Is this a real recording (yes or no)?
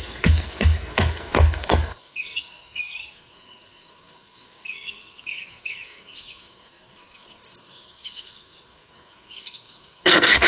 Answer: no